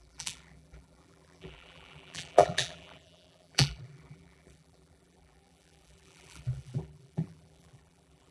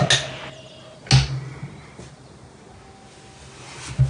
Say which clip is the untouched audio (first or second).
second